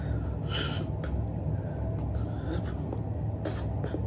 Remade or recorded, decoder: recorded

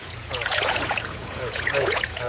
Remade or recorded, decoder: remade, vocoder, Vocos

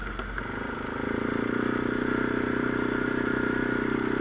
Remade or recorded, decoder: recorded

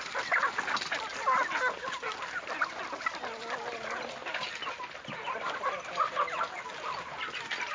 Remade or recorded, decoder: recorded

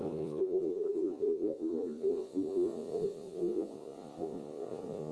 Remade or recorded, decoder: remade, vocoder, Vocos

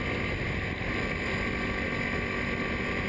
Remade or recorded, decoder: recorded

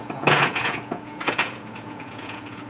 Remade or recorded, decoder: remade, vocoder, Vocos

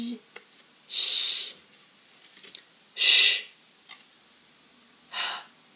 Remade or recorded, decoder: recorded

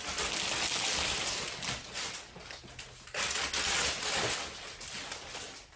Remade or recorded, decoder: recorded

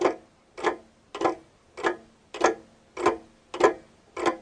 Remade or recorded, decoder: recorded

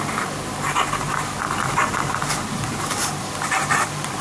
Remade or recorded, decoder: recorded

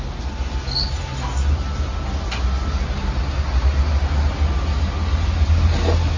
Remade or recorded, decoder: recorded